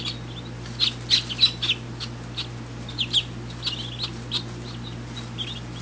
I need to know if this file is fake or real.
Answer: real